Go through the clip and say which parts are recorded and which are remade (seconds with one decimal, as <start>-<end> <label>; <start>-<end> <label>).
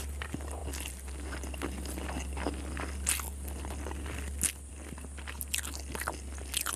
0.0-6.8 recorded